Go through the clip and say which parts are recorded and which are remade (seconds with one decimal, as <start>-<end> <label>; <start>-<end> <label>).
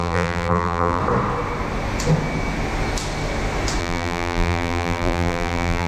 0.0-1.0 remade; 1.0-3.8 recorded; 3.8-5.9 remade